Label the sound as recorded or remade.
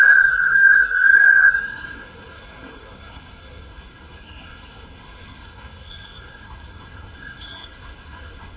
remade